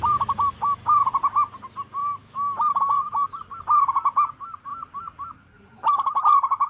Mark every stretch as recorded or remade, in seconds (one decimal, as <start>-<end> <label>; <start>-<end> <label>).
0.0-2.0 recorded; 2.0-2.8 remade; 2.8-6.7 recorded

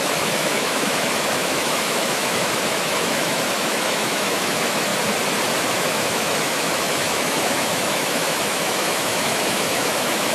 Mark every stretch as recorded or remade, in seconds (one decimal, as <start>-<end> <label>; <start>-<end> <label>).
0.0-4.9 remade; 4.9-5.8 recorded; 5.8-10.3 remade

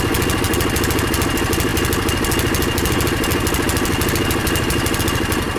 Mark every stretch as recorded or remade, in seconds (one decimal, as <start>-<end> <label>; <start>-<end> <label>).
0.0-5.6 recorded